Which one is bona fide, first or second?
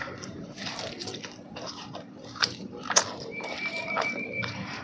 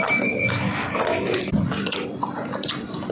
second